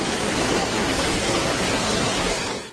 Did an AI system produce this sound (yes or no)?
yes